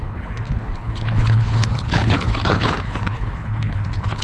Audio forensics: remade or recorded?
remade